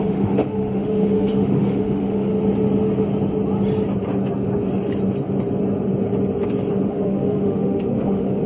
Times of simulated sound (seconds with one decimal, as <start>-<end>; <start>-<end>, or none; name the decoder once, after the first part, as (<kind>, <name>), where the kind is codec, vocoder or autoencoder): 0.0-2.3 (autoencoder, DAC-VAE); 6.9-8.5